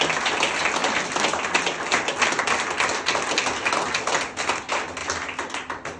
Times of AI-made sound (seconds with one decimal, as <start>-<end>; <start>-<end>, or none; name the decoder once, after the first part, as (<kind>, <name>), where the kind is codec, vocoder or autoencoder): 5.0-6.0 (vocoder, BigVGAN v2)